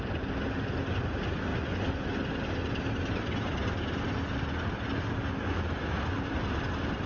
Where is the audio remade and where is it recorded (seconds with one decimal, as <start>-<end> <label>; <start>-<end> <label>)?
0.0-7.1 recorded